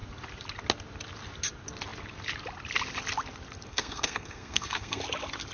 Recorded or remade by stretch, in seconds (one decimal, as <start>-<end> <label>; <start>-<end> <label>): 0.0-3.7 recorded; 3.7-5.0 remade; 5.0-5.5 recorded